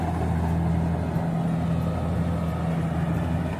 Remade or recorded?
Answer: recorded